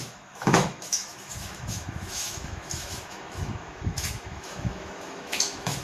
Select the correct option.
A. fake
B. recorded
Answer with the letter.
A